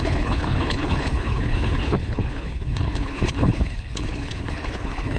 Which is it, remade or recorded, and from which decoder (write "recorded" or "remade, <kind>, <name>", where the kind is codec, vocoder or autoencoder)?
remade, codec, HILCodec